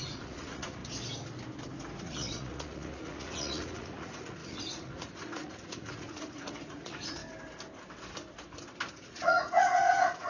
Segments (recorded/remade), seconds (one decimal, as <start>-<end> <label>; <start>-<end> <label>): 0.0-0.8 remade; 0.8-2.0 recorded; 2.0-7.2 remade; 7.2-8.9 recorded; 8.9-10.3 remade

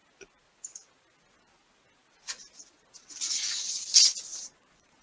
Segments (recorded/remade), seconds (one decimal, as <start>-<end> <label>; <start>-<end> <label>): 0.0-4.3 recorded; 4.3-5.0 remade

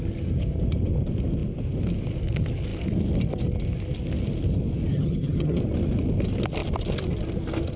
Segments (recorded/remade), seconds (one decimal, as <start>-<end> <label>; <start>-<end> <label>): 0.0-4.9 recorded; 4.9-5.6 remade; 5.6-7.8 recorded

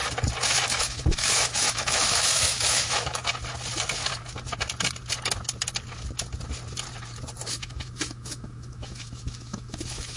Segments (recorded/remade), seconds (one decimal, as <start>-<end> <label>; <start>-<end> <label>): 0.0-0.7 recorded; 0.7-3.2 remade; 3.2-7.5 recorded; 7.5-10.2 remade